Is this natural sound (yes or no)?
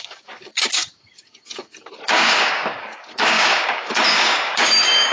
no